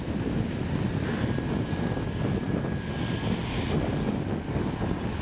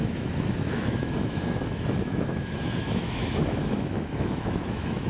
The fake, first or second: second